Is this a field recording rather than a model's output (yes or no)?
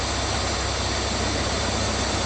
yes